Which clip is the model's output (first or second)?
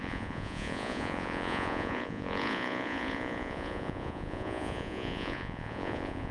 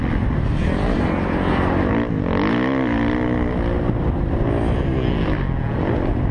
first